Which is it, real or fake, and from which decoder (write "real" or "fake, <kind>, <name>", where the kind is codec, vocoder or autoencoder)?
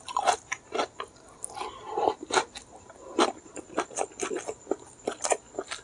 real